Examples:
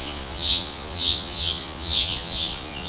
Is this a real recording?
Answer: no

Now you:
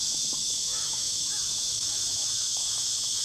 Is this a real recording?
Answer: no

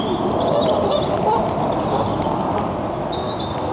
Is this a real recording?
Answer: yes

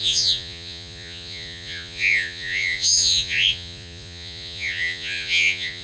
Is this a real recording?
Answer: no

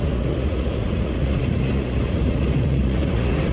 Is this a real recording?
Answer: no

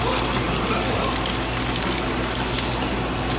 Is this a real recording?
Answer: yes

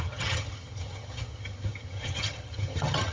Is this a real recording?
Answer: no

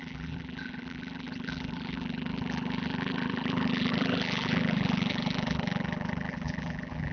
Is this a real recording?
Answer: no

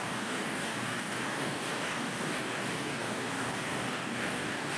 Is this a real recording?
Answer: no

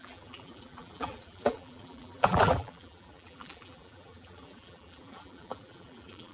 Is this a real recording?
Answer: no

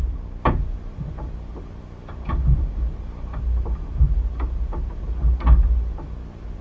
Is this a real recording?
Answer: yes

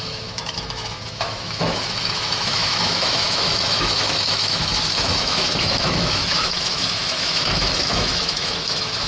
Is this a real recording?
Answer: no